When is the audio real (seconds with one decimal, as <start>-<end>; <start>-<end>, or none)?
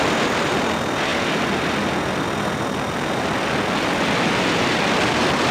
1.1-4.4